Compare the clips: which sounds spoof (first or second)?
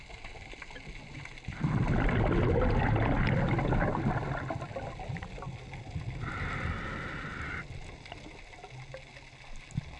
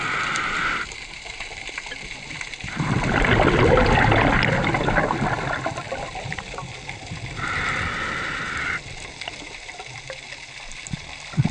second